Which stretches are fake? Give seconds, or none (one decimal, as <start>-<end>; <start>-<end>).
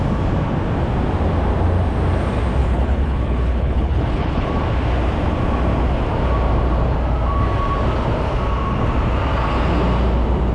2.6-4.5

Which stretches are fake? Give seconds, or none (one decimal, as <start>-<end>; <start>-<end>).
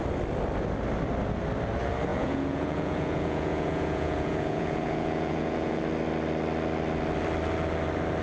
2.1-5.8